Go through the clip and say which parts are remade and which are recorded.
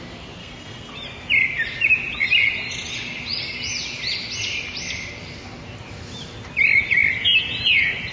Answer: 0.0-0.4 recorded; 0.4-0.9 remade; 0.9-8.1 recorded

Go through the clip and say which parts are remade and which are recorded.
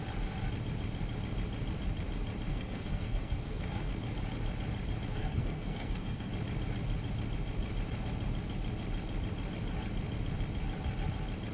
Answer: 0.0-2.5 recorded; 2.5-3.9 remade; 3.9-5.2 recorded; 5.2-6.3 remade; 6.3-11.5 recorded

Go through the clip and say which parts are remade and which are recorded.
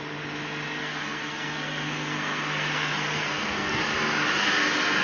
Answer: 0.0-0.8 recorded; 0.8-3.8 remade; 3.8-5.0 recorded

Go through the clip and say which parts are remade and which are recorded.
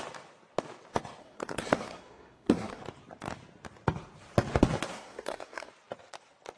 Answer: 0.0-1.2 recorded; 1.2-2.8 remade; 2.8-4.9 recorded; 4.9-5.7 remade; 5.7-6.6 recorded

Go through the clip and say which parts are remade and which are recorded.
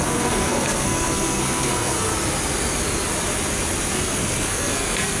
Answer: 0.0-2.1 remade; 2.1-3.9 recorded; 3.9-5.2 remade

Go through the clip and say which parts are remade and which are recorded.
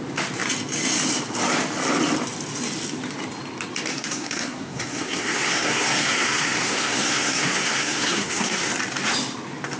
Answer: 0.0-3.9 recorded; 3.9-8.7 remade; 8.7-9.8 recorded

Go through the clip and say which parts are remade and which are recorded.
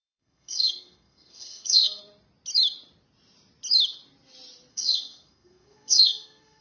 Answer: 0.0-2.0 remade; 2.0-4.7 recorded; 4.7-6.6 remade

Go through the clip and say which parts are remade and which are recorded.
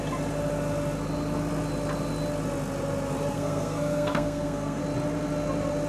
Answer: 0.0-3.3 recorded; 3.3-4.8 remade; 4.8-5.9 recorded